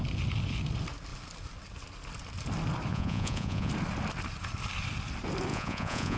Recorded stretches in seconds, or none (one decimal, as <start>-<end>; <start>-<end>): 0.0-2.9; 3.7-5.5